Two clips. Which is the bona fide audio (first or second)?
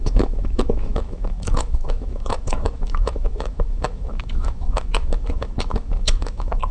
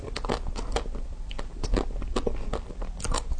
second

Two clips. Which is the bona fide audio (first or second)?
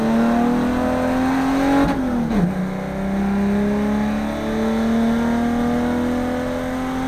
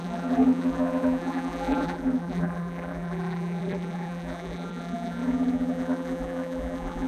first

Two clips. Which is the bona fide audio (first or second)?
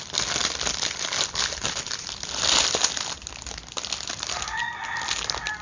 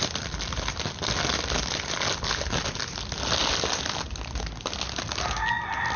second